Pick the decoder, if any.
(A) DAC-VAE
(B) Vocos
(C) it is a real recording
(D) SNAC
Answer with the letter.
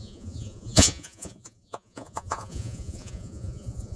B